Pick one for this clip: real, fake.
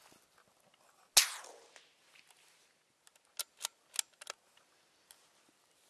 real